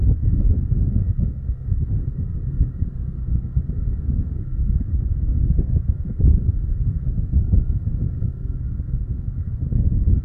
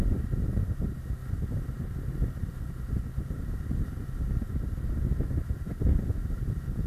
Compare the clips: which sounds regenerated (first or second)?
first